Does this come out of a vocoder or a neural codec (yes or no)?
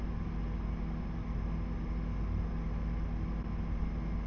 no